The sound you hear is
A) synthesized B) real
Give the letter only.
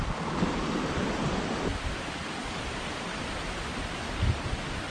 B